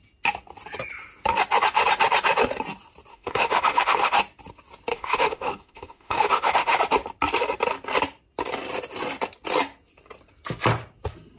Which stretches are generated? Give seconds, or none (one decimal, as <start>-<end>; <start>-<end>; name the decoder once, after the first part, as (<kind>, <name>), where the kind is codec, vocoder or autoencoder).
3.1-4.2 (autoencoder, DAC-VAE); 4.9-6.8